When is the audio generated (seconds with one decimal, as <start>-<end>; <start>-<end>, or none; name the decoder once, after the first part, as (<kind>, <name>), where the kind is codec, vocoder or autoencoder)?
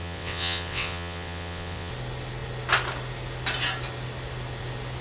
0.0-1.9 (vocoder, WaveNeXt)